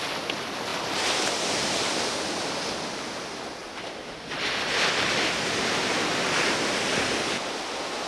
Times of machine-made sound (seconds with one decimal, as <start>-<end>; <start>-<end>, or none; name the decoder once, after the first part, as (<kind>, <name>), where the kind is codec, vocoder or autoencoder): 0.7-3.0 (vocoder, BigVGAN v2)